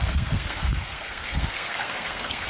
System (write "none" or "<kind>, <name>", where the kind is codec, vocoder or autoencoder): codec, SNAC